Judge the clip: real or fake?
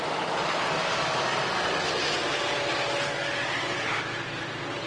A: real